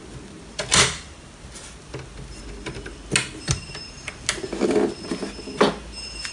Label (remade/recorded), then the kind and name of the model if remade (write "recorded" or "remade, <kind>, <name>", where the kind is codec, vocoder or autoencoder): recorded